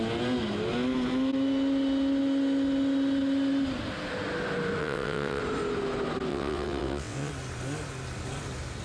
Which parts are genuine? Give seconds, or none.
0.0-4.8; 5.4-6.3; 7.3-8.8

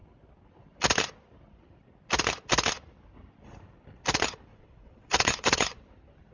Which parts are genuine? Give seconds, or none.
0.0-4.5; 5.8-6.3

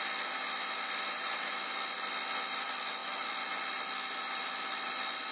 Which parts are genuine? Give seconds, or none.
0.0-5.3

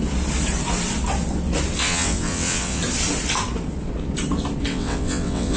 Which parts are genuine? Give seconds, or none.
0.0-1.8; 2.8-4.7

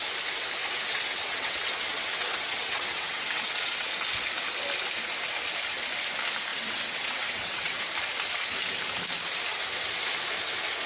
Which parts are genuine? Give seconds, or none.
0.0-0.6; 3.9-6.5; 7.8-10.9